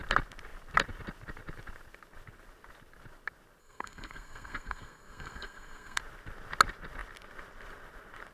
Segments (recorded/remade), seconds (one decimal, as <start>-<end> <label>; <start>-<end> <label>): 0.0-3.6 recorded; 3.6-6.0 remade; 6.0-8.3 recorded